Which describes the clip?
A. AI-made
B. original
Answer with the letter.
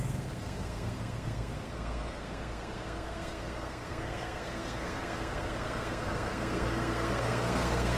A